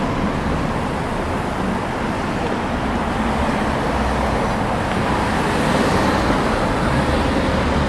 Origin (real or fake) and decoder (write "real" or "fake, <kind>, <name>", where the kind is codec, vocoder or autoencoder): real